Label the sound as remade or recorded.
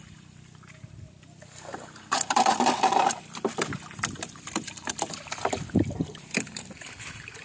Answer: remade